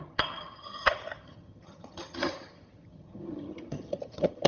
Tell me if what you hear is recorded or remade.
remade